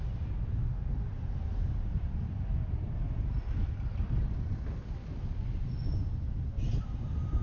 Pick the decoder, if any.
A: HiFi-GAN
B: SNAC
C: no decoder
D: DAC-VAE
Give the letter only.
C